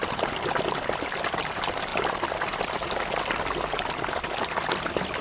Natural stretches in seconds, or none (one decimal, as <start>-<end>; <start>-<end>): 0.0-5.2